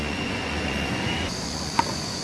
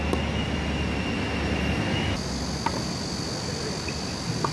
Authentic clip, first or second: second